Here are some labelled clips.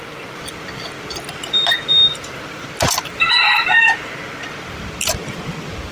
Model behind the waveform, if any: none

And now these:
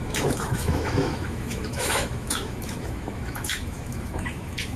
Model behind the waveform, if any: autoencoder, DAC-VAE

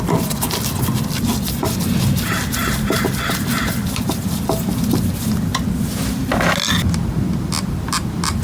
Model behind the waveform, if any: none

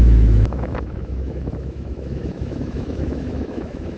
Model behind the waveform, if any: autoencoder, DAC-VAE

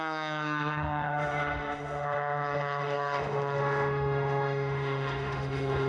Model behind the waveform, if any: autoencoder, DAC-VAE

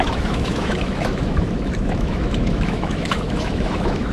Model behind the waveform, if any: autoencoder, DAC-VAE